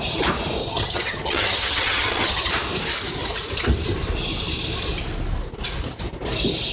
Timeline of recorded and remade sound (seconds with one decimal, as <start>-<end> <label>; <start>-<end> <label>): 0.0-0.6 recorded; 0.6-2.5 remade; 2.5-6.7 recorded